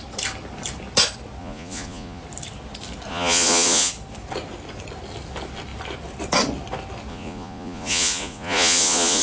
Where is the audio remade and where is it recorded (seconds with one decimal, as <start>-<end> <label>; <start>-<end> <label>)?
0.0-1.4 recorded; 1.4-2.2 remade; 2.2-3.1 recorded; 3.1-3.9 remade; 3.9-7.1 recorded; 7.1-9.2 remade